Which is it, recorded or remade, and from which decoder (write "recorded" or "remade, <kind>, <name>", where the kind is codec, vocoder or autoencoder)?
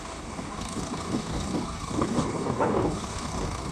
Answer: remade, codec, DAC